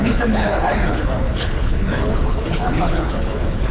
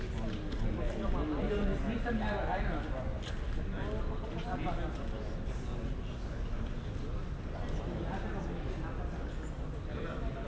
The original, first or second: second